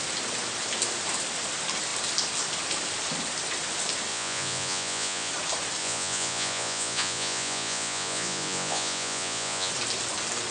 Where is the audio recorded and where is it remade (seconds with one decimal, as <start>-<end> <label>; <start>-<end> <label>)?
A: 0.0-4.1 recorded; 4.1-5.3 remade; 5.3-5.8 recorded; 5.8-9.7 remade; 9.7-10.5 recorded